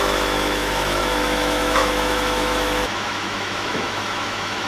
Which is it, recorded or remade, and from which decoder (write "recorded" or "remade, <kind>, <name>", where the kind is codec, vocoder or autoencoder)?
remade, autoencoder, DAC-VAE